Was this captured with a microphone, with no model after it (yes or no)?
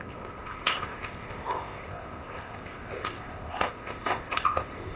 no